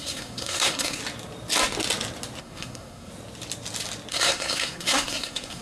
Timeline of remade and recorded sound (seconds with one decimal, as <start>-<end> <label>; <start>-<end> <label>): 0.0-1.0 remade; 1.0-2.4 recorded; 2.4-3.1 remade; 3.1-4.1 recorded; 4.1-5.6 remade